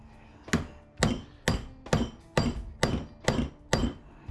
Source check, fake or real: real